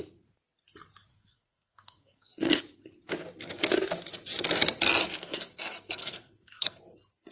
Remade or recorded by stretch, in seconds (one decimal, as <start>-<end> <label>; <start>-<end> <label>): 0.0-1.1 recorded; 1.1-2.6 remade; 2.6-5.0 recorded; 5.0-6.8 remade; 6.8-7.3 recorded